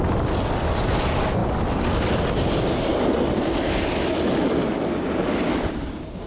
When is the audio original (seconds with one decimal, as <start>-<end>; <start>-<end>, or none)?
0.0-6.3